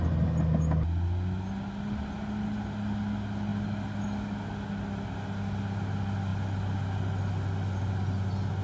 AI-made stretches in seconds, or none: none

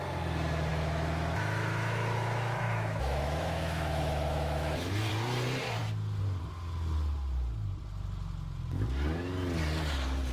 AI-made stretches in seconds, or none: 0.7-5.1 (autoencoder, DAC-VAE)

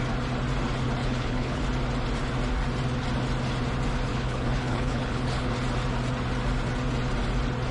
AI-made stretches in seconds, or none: 1.0-1.6 (codec, HILCodec); 4.1-5.5

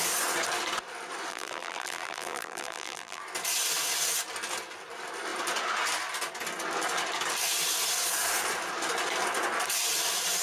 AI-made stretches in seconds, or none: 1.3-3.2 (vocoder, BigVGAN v2)

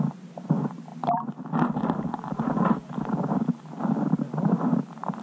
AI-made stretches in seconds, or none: none

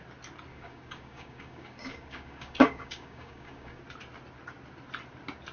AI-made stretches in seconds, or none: 0.5-3.8 (codec, DAC)